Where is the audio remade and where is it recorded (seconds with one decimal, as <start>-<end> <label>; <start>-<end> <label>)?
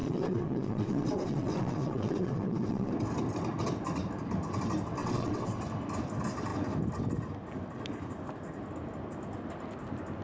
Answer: 0.0-2.9 remade; 2.9-5.0 recorded; 5.0-5.6 remade; 5.6-10.2 recorded